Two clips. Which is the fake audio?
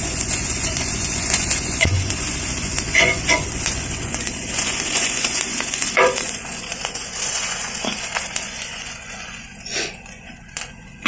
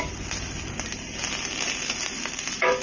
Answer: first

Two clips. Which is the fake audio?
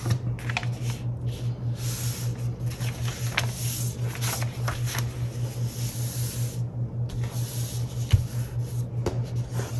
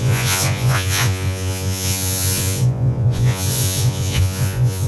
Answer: second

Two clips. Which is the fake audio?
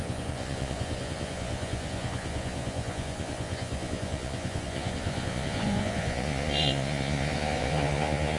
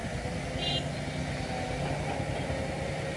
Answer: first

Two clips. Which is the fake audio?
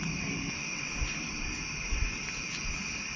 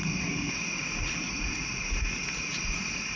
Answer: second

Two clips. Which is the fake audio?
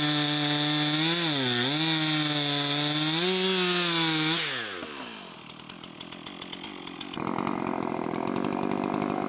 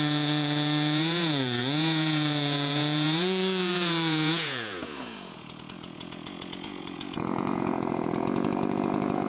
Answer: second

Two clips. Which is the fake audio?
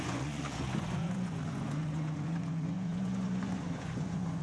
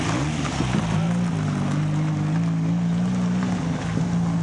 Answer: first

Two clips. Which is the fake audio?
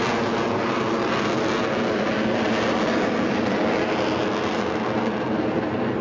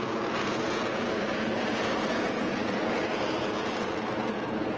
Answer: second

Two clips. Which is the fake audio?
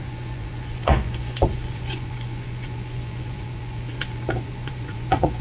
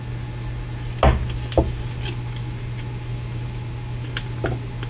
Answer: first